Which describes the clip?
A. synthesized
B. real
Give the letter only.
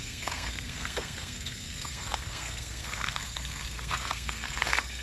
A